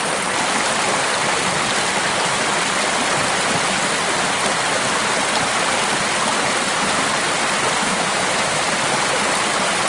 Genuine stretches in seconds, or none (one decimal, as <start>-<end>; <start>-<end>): 0.0-7.8; 8.6-9.9